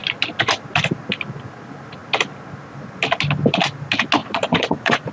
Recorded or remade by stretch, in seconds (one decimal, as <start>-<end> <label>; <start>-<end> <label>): 0.0-4.2 recorded; 4.2-5.1 remade